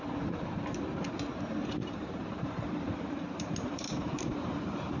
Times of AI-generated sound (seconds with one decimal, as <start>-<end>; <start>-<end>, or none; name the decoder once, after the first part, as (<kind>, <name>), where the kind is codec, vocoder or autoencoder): 1.8-5.0 (vocoder, BigVGAN v2)